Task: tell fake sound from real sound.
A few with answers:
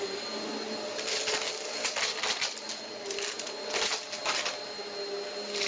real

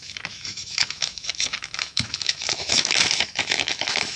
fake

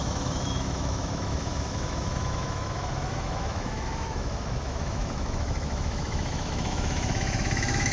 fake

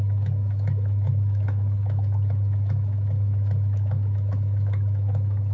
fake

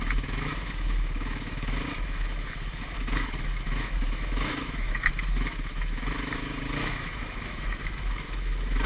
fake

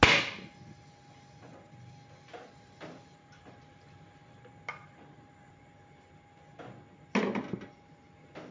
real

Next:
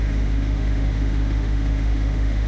fake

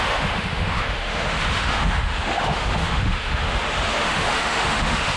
fake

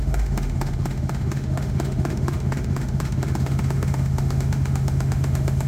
fake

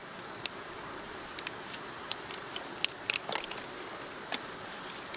real